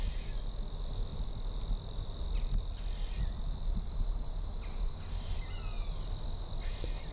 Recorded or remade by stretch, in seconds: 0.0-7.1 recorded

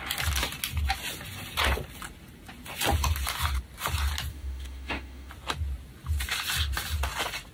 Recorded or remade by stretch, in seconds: 0.0-4.3 recorded; 4.3-5.3 remade; 5.3-7.5 recorded

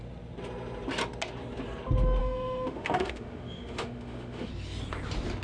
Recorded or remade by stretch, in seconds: 0.0-2.2 recorded; 2.2-4.5 remade; 4.5-5.4 recorded

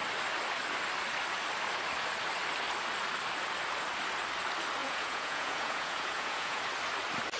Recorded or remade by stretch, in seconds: 0.0-4.8 recorded; 4.8-6.6 remade; 6.6-7.4 recorded

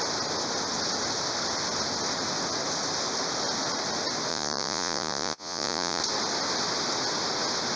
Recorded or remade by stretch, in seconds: 0.0-4.3 recorded; 4.3-6.0 remade; 6.0-7.8 recorded

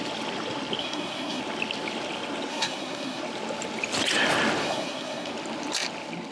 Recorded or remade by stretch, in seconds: 0.0-0.8 recorded; 0.8-1.4 remade; 1.4-2.5 recorded; 2.5-3.2 remade; 3.2-4.6 recorded; 4.6-5.3 remade; 5.3-6.3 recorded